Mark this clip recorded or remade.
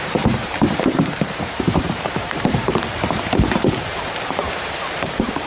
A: remade